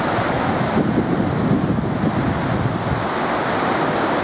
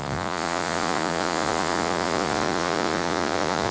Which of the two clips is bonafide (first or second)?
first